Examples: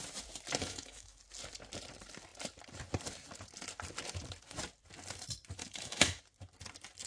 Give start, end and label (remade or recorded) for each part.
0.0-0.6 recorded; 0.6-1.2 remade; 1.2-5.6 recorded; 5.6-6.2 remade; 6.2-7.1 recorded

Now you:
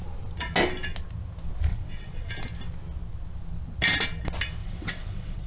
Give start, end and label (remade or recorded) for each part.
0.0-1.7 recorded; 1.7-2.3 remade; 2.3-4.6 recorded; 4.6-5.5 remade